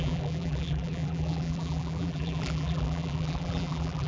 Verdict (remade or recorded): remade